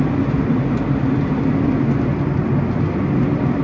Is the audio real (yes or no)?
yes